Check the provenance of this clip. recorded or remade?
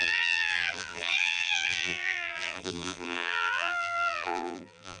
remade